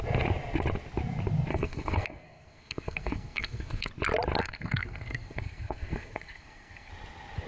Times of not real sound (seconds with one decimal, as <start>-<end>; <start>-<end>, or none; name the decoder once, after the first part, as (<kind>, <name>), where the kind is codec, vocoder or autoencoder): 1.5-3.9 (codec, SNAC); 4.4-6.9

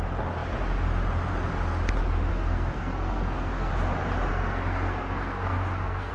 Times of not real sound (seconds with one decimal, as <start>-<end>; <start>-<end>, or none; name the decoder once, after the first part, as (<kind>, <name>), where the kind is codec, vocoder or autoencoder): 2.3-3.7 (codec, SNAC); 4.3-6.1

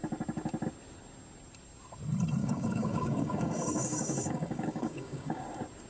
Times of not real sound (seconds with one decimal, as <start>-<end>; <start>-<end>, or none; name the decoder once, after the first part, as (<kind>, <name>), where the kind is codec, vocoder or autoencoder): 2.4-5.4 (codec, DAC)

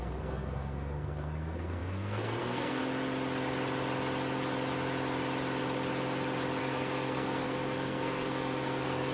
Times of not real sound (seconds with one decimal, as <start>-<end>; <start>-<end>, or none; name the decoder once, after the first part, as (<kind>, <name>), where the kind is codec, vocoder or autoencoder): 0.0-2.8 (codec, SNAC); 6.6-9.1